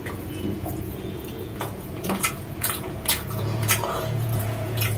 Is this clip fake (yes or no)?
yes